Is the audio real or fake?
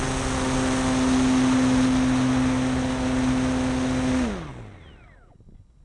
real